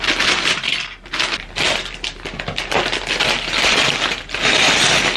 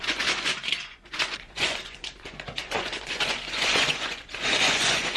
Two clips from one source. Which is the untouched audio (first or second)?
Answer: first